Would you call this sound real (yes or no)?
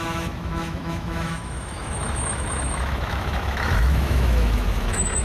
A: no